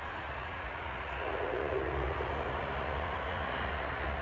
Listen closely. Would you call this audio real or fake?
fake